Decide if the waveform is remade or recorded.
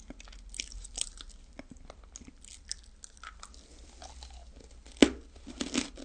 recorded